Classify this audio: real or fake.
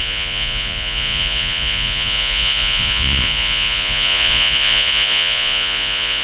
fake